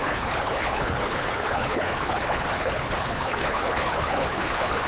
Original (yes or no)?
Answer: no